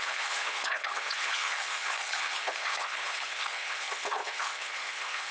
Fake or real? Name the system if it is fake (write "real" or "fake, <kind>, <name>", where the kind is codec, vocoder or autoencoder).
fake, codec, HILCodec